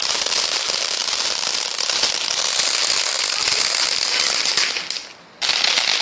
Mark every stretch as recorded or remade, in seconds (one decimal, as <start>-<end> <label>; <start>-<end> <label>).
0.0-6.0 recorded